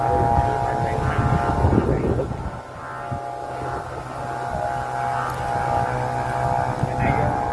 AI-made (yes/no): no